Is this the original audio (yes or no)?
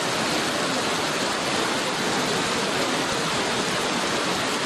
yes